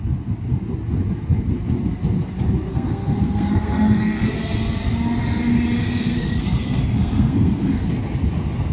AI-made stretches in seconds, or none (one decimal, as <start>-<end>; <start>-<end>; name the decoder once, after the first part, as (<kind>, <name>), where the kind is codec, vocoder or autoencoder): 2.7-4.3 (codec, SNAC); 5.8-7.9